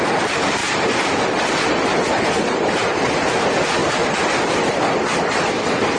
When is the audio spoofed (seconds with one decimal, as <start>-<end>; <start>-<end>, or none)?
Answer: 0.6-3.4; 3.8-5.5